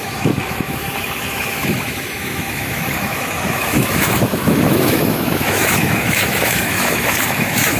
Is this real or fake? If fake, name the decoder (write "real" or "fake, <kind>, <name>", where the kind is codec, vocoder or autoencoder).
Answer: fake, autoencoder, DAC-VAE